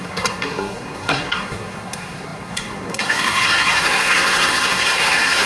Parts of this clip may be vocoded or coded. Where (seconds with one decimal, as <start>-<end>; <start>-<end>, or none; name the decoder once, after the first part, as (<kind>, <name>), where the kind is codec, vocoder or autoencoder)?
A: 0.0-5.5 (codec, SNAC)